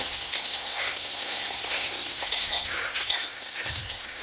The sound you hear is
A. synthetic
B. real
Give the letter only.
A